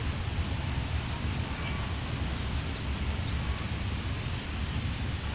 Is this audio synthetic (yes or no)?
yes